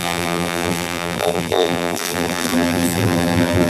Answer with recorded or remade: remade